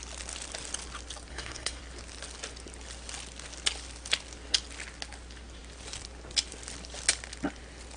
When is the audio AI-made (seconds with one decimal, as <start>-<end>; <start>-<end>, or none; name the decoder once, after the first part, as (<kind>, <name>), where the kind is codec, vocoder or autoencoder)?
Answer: 1.3-1.8 (codec, SNAC)